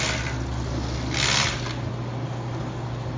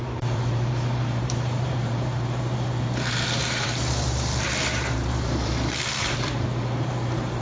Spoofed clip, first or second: second